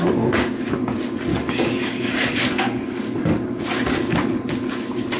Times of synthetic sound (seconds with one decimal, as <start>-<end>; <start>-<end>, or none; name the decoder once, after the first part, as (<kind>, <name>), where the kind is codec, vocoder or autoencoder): 1.3-3.6 (codec, DAC)